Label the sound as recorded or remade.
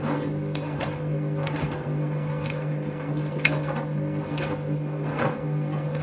remade